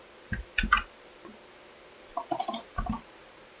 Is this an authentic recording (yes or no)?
yes